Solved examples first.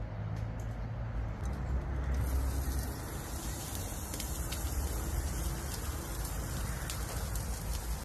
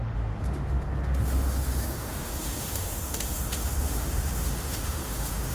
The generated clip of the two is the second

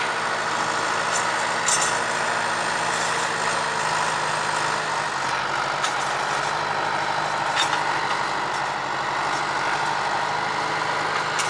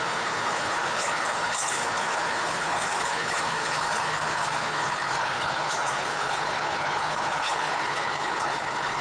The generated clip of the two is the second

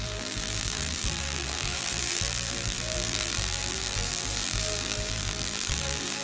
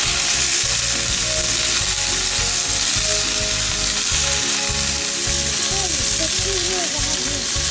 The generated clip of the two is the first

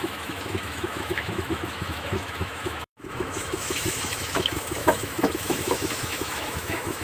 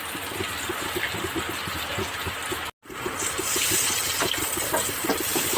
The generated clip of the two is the first